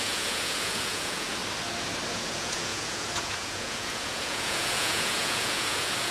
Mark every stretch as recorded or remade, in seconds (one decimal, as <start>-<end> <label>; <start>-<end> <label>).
0.0-1.4 remade; 1.4-2.1 recorded; 2.1-6.1 remade